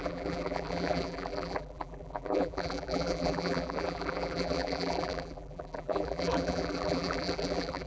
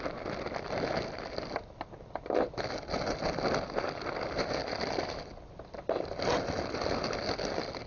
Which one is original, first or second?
second